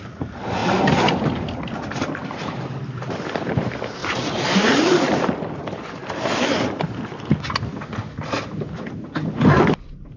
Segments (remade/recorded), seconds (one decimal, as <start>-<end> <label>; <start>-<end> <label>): 0.0-0.6 recorded; 0.6-1.3 remade; 1.3-2.2 recorded; 2.2-3.5 remade; 3.5-4.0 recorded; 4.0-6.9 remade; 6.9-10.2 recorded